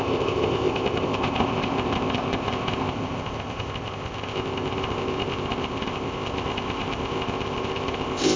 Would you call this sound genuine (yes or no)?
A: no